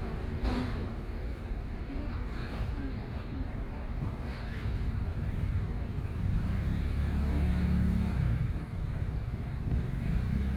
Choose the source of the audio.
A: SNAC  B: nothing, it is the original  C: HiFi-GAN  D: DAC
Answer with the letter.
D